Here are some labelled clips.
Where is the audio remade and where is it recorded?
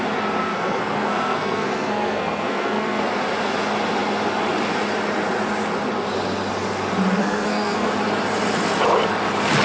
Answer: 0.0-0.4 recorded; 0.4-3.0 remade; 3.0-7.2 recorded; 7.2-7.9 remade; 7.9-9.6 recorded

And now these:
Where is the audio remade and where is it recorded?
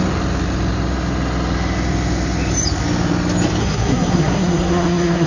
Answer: 0.0-3.6 recorded; 3.6-5.3 remade